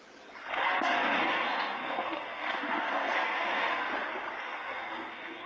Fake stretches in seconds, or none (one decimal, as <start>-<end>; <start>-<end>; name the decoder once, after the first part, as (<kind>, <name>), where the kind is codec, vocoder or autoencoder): 0.6-3.9 (codec, SNAC); 4.4-5.5

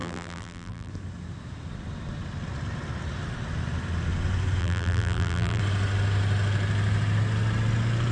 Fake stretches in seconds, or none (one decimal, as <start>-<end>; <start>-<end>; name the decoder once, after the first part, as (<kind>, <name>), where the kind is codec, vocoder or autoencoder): 0.0-0.9 (vocoder, BigVGAN v2); 4.6-5.6

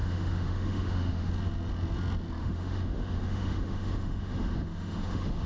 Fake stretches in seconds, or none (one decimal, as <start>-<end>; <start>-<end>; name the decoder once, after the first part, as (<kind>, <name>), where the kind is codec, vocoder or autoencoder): 0.0-1.3 (autoencoder, DAC-VAE); 2.4-5.5

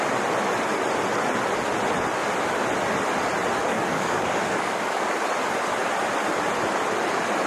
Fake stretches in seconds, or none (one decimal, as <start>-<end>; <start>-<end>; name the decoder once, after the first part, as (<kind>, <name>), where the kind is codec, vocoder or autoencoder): 3.7-5.0 (codec, DAC)